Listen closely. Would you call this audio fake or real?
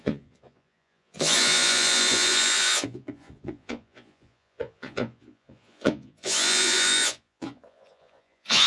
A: fake